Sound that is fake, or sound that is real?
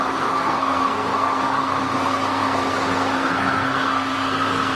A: fake